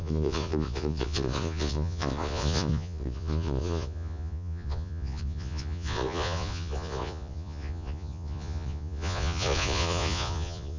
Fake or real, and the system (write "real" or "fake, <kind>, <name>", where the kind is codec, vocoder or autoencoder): fake, vocoder, Vocos